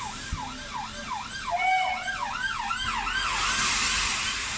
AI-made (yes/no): no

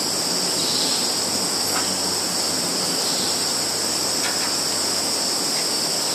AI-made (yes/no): no